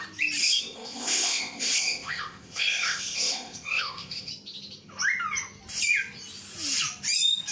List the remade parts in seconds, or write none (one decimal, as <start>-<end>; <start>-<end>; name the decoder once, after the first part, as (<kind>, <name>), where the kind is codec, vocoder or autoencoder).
0.4-4.3 (codec, ZipCodec)